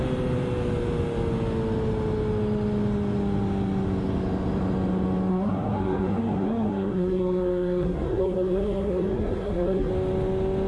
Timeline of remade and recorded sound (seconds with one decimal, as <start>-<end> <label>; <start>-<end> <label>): 0.0-5.3 recorded; 5.3-9.9 remade; 9.9-10.7 recorded